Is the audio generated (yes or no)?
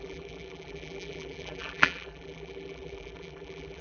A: yes